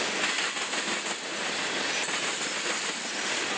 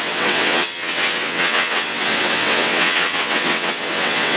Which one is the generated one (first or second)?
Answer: second